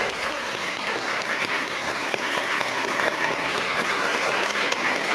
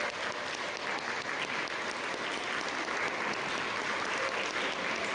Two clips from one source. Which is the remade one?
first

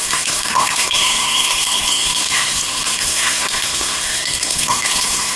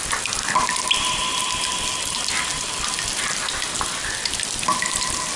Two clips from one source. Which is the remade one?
first